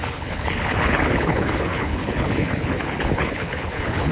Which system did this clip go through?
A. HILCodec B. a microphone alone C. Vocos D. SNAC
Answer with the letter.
A